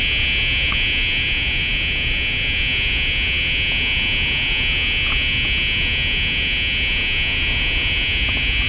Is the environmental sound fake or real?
real